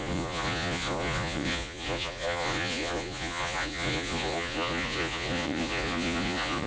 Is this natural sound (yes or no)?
no